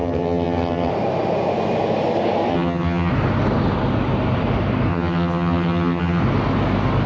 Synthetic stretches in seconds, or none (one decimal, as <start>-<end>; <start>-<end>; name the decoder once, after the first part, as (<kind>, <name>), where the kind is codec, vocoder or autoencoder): 0.0-0.9 (vocoder, HiFi-GAN); 2.5-3.1; 4.9-6.2